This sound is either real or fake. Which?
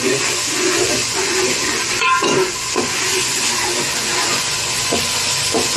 fake